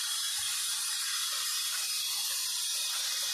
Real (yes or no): yes